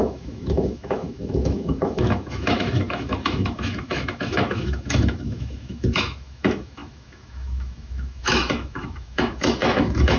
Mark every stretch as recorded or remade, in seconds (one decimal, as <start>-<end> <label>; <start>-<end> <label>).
0.0-10.2 remade